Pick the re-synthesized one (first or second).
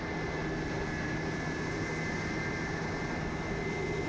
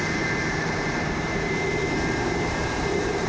second